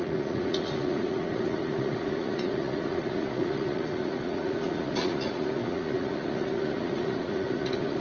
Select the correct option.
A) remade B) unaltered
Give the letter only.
A